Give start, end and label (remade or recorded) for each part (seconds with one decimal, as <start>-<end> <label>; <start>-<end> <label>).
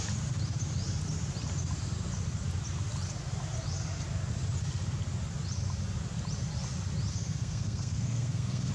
0.0-7.1 recorded; 7.1-8.7 remade